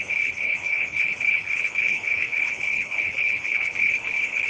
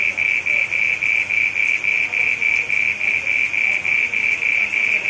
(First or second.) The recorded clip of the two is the second